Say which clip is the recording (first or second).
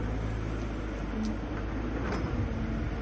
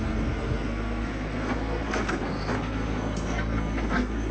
first